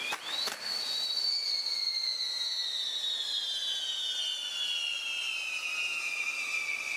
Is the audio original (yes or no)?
yes